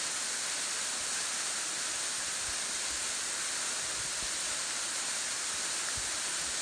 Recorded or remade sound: remade